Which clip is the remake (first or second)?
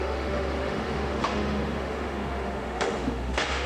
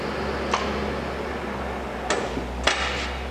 first